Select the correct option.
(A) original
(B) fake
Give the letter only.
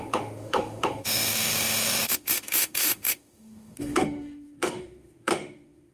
B